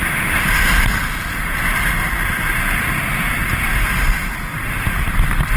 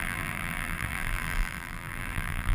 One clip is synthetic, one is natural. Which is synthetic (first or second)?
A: second